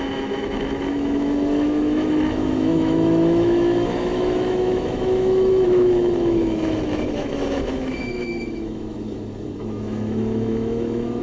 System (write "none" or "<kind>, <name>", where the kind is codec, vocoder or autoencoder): autoencoder, DAC-VAE